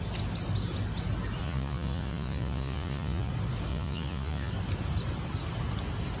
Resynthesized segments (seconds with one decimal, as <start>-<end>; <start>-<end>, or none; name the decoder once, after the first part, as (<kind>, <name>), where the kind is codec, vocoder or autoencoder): 1.4-3.3 (vocoder, Vocos); 3.7-4.5